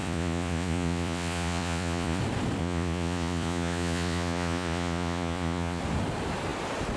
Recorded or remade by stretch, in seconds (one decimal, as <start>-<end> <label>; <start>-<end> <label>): 0.0-2.2 remade; 2.2-2.6 recorded; 2.6-5.8 remade; 5.8-7.0 recorded